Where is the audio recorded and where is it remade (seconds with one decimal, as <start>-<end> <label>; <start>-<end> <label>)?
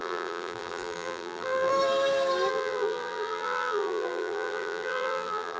0.0-1.7 remade; 1.7-2.5 recorded; 2.5-5.6 remade